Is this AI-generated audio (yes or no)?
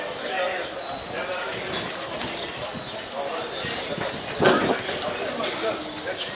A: no